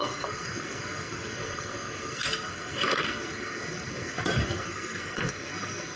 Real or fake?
fake